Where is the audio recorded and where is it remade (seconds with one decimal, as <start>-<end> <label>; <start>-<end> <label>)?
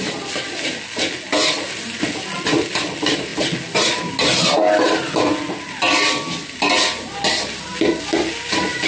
0.0-8.9 recorded